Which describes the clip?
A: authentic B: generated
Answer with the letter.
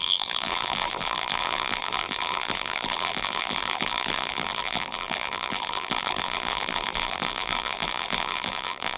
B